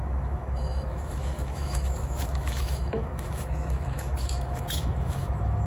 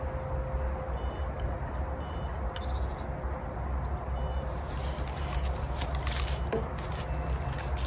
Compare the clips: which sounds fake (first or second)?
first